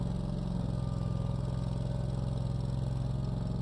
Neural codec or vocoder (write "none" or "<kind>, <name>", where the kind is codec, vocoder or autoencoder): none